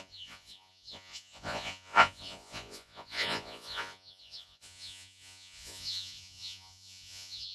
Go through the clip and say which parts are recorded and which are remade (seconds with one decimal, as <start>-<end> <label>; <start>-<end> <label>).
0.0-7.5 remade